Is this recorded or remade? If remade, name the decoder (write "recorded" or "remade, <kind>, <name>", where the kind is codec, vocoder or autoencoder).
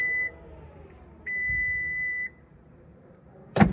remade, vocoder, BigVGAN v2